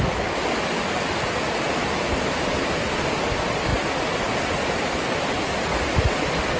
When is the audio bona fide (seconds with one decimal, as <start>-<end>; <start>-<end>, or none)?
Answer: 0.0-6.6